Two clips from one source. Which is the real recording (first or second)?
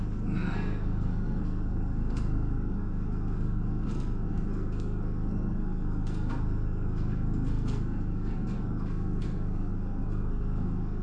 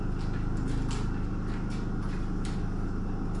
second